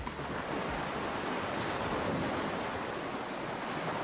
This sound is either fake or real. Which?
real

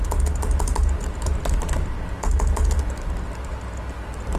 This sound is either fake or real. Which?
real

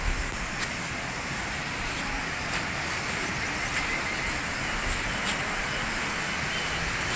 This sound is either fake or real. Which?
real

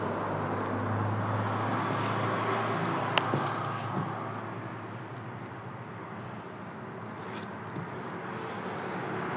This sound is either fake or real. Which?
real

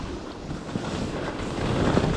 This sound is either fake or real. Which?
real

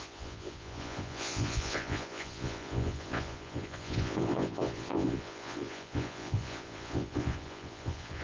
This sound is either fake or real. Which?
fake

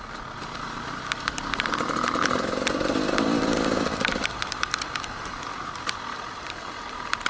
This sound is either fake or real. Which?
real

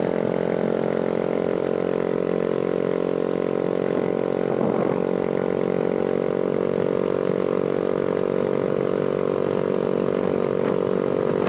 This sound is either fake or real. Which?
real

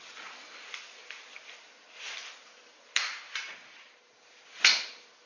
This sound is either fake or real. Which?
real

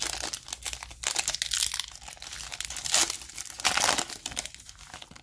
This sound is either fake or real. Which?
real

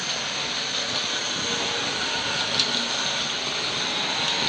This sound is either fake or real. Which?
real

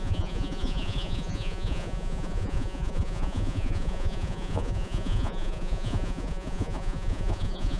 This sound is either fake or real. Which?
fake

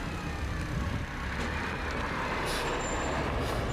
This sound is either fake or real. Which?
real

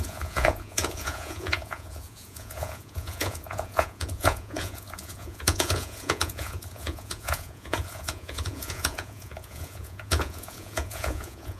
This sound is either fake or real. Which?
fake